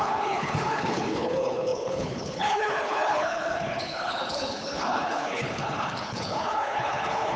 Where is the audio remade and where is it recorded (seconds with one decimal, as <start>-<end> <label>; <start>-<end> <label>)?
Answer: 0.0-7.4 remade